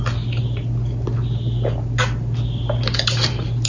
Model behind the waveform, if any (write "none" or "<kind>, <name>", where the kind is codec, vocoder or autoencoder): none